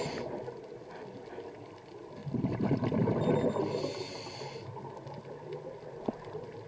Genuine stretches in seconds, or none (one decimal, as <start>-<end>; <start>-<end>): 0.0-6.7